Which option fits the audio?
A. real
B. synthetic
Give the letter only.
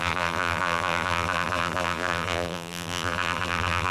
B